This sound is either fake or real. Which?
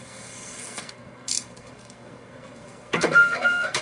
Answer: fake